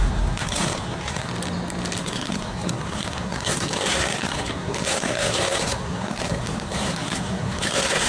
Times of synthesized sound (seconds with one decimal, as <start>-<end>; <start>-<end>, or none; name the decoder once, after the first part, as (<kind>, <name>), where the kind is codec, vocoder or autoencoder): 0.0-1.3 (codec, SNAC); 2.0-8.1